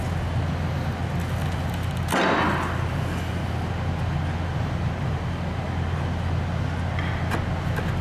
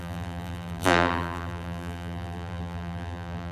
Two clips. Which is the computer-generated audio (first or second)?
second